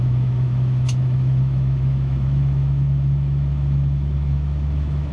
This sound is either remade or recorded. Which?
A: remade